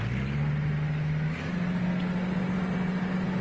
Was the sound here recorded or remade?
recorded